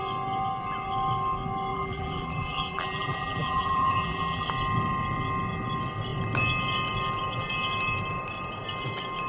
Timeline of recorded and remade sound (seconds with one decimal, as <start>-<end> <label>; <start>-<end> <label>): 0.0-1.7 recorded; 1.7-4.5 remade; 4.5-9.3 recorded